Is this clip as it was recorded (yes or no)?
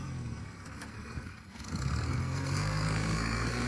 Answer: no